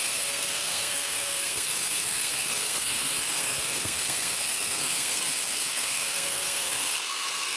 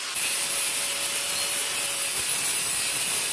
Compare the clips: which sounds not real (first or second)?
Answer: first